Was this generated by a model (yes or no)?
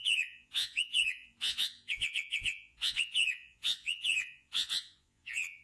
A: yes